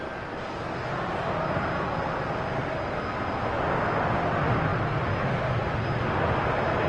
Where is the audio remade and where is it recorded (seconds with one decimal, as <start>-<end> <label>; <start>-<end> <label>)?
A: 0.0-6.9 recorded